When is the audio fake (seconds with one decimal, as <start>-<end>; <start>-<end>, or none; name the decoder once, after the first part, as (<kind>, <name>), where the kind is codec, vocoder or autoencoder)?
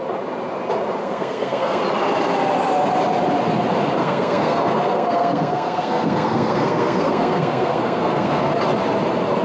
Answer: 1.0-1.8 (codec, SNAC); 4.0-8.5